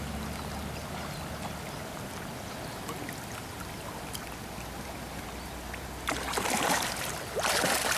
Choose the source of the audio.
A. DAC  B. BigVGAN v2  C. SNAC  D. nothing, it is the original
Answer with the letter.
D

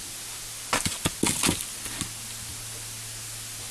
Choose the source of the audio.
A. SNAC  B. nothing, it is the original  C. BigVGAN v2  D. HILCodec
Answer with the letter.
B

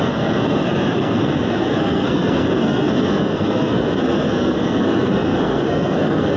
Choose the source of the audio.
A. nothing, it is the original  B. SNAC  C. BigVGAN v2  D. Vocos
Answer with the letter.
B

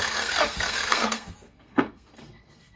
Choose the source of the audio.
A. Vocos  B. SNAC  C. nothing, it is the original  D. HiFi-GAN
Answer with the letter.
B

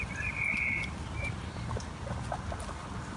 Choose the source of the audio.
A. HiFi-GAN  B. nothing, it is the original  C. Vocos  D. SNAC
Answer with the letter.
B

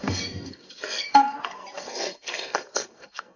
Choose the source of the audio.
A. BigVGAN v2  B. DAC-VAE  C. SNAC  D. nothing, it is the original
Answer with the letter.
C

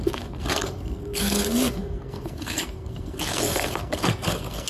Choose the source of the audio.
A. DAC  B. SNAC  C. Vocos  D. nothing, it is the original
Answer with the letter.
B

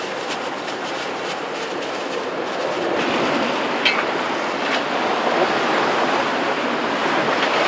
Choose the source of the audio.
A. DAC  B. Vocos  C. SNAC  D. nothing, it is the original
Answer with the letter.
D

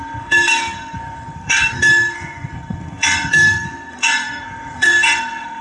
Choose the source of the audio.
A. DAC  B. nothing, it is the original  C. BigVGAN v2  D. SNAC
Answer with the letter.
D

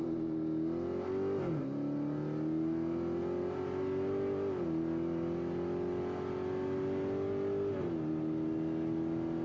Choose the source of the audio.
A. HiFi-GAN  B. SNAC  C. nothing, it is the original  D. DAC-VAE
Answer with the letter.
C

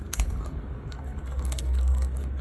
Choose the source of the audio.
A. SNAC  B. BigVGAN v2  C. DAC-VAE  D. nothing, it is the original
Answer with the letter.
A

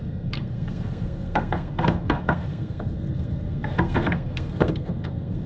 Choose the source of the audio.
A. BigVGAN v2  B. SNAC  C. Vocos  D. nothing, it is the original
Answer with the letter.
B